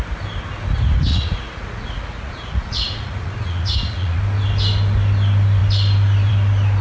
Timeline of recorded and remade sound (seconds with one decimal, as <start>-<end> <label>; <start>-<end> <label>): 0.0-1.1 recorded; 1.1-4.2 remade; 4.2-6.8 recorded

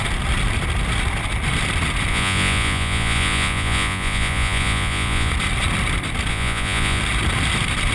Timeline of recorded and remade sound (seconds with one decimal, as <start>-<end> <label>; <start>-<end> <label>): 0.0-2.1 recorded; 2.1-5.3 remade; 5.3-6.3 recorded; 6.3-7.0 remade; 7.0-7.9 recorded

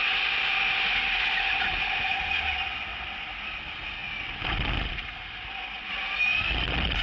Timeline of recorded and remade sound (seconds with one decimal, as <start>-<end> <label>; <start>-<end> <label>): 0.0-7.0 recorded

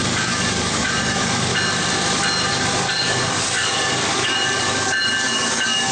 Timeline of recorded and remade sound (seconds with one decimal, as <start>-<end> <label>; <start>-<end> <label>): 0.0-1.5 remade; 1.5-2.5 recorded; 2.5-5.9 remade